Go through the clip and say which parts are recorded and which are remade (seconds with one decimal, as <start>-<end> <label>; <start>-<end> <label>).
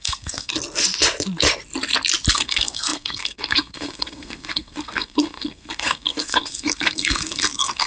0.0-0.5 remade; 0.5-2.3 recorded; 2.3-7.9 remade